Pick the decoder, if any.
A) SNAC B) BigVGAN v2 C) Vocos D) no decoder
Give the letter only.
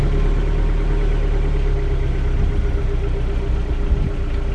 D